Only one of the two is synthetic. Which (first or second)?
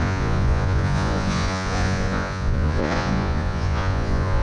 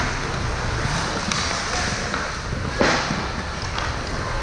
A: first